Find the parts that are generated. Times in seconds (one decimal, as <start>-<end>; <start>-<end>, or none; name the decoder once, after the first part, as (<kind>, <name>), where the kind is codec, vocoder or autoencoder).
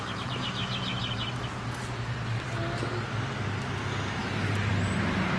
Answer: none